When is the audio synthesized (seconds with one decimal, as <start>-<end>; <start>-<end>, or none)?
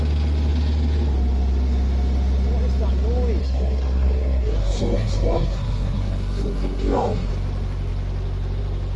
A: 3.4-7.3